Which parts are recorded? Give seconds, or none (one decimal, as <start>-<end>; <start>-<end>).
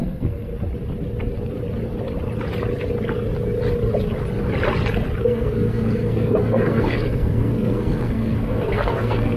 0.5-5.2